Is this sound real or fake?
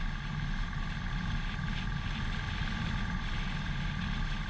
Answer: real